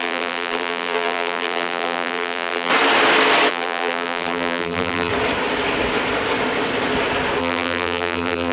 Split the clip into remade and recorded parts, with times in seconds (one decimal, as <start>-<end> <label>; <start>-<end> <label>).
0.0-2.7 remade; 2.7-3.5 recorded; 3.5-5.1 remade; 5.1-7.4 recorded; 7.4-8.5 remade